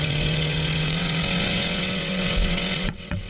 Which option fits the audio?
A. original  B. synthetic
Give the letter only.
B